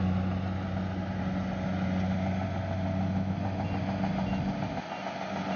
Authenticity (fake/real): real